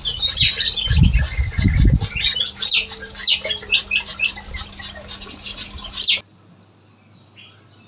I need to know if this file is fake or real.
real